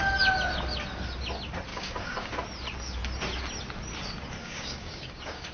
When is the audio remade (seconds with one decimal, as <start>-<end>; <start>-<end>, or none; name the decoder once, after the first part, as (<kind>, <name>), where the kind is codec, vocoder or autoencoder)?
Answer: 1.7-2.3 (codec, DAC); 4.4-5.5